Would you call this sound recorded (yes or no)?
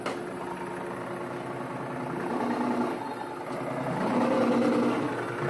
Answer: yes